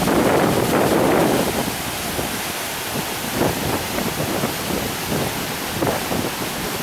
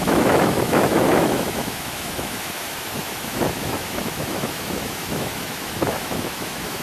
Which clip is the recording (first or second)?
first